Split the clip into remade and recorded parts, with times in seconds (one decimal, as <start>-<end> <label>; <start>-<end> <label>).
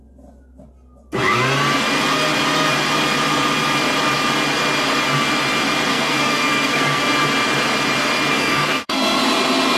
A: 0.0-5.9 recorded; 5.9-7.0 remade; 7.0-8.3 recorded; 8.3-9.2 remade; 9.2-9.8 recorded